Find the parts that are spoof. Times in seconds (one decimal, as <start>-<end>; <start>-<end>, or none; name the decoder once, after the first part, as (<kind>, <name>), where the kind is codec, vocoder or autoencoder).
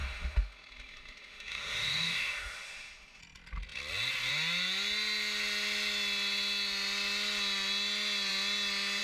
0.0-3.2 (autoencoder, DAC-VAE)